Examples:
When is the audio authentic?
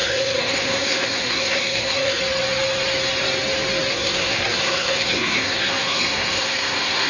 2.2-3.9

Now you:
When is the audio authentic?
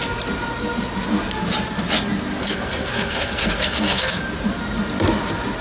0.0-2.4; 4.2-5.6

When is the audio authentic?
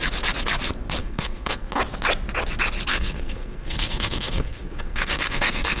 0.0-1.0; 1.7-2.9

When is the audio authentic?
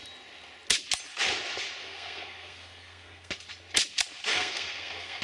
0.0-1.8; 3.3-4.3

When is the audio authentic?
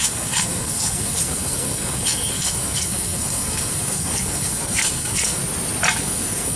5.4-6.0